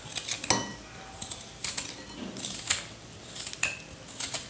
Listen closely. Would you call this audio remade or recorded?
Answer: recorded